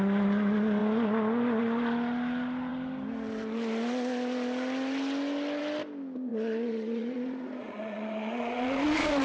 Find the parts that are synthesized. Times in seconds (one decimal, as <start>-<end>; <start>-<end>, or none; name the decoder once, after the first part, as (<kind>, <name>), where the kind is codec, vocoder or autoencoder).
6.3-9.2 (vocoder, Vocos)